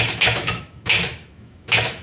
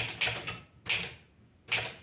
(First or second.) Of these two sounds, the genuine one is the second